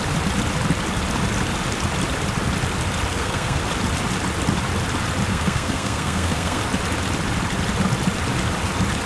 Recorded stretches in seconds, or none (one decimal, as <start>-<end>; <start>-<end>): 0.0-3.1; 3.6-5.3; 6.6-9.1